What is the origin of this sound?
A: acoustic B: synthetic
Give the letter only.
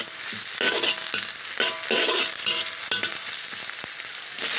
A